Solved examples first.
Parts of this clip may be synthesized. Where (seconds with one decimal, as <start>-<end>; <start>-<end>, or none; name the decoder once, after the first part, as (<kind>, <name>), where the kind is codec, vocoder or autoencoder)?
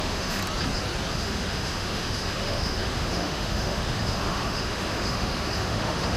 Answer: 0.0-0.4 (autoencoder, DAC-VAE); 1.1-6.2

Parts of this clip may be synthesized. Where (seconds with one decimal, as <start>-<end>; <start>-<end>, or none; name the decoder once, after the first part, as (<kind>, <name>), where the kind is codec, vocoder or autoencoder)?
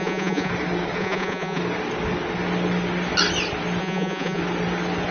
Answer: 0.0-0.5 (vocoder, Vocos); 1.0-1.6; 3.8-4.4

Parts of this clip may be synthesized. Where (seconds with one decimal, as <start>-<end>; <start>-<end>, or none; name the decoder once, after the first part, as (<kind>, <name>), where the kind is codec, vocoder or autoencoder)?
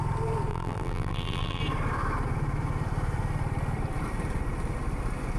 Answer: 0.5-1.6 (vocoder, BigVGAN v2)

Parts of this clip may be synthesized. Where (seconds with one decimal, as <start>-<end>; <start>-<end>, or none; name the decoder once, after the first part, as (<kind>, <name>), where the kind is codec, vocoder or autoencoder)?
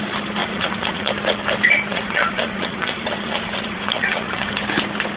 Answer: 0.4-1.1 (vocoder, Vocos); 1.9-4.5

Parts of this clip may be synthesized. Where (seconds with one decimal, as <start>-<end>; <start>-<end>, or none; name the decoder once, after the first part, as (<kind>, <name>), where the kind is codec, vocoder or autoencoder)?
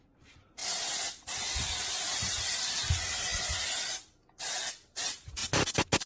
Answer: 0.0-0.6 (vocoder, BigVGAN v2); 2.7-3.3; 4.7-5.4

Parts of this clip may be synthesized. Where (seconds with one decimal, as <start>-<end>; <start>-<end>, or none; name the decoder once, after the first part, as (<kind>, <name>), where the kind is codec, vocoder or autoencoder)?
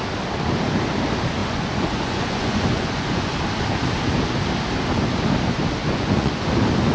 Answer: 1.4-3.3 (vocoder, Vocos); 5.8-6.5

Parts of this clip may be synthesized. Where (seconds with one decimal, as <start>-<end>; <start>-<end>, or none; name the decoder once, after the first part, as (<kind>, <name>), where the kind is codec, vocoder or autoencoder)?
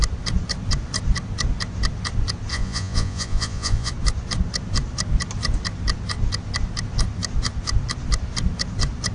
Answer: 2.5-3.9 (vocoder, Vocos)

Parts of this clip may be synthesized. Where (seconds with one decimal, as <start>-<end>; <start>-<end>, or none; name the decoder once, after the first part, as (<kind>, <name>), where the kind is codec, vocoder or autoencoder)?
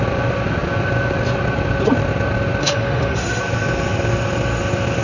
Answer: 2.6-3.4 (autoencoder, DAC-VAE)